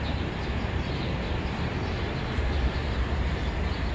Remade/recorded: remade